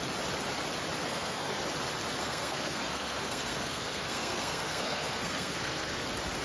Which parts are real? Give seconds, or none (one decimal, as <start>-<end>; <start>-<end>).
0.0-1.0; 1.6-2.2; 6.0-6.4